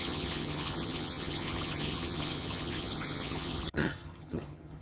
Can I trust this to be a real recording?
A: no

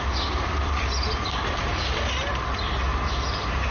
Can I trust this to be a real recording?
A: yes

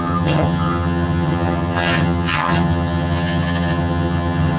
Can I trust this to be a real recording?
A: no